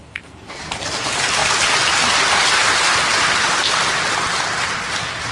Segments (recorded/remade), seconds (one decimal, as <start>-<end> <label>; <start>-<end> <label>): 0.0-0.6 remade; 0.6-5.3 recorded